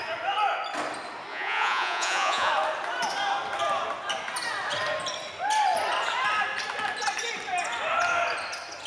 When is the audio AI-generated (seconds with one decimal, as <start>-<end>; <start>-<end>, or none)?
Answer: 1.3-2.5